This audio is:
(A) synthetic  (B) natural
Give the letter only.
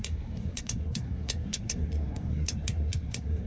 A